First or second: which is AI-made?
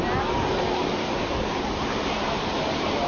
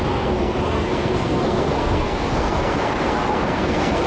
second